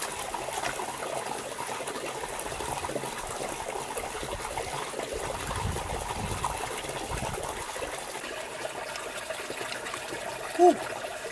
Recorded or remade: recorded